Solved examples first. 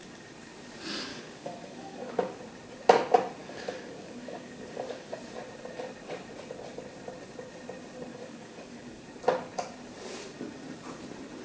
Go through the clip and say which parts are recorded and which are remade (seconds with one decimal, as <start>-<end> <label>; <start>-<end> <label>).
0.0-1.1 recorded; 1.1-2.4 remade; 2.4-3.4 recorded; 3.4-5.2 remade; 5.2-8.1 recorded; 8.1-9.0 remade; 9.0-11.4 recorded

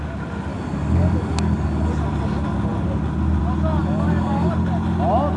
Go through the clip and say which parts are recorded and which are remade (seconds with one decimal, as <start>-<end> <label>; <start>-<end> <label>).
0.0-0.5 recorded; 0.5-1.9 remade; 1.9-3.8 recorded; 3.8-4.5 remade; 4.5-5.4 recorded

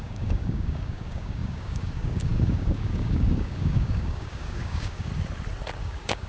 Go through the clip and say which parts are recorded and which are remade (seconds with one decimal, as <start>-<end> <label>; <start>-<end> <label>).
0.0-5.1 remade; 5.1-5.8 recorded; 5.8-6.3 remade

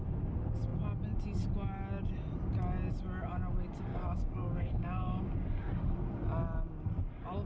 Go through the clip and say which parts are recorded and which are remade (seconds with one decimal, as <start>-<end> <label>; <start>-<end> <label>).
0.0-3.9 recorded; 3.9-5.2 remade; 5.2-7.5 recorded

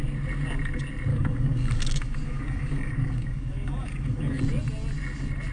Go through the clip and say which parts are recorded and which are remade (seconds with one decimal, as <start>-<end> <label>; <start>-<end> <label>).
0.0-1.1 recorded; 1.1-4.4 remade; 4.4-5.5 recorded

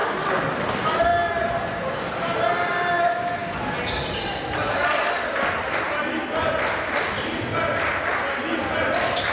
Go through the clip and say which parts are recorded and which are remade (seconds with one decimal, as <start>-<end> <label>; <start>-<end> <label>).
0.0-9.3 recorded

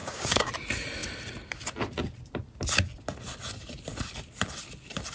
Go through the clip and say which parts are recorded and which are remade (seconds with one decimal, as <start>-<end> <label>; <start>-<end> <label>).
0.0-0.5 remade; 0.5-5.1 recorded